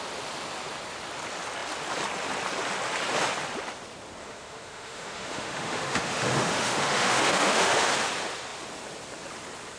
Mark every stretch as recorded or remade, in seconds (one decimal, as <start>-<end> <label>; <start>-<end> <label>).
0.0-4.2 recorded; 4.2-7.9 remade; 7.9-9.8 recorded